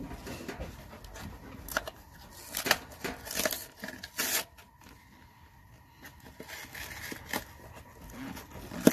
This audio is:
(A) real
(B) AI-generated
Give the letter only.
A